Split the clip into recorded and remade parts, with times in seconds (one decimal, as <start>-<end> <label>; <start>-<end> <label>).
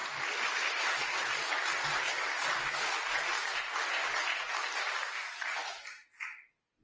0.0-0.8 remade; 0.8-6.8 recorded